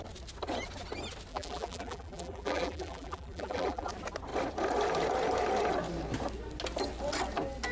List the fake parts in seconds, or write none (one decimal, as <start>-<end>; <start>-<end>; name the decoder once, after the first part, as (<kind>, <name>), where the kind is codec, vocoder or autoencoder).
1.3-3.9 (vocoder, BigVGAN v2)